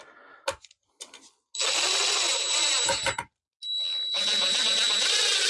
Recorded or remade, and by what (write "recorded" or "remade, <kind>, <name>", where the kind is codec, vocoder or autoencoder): recorded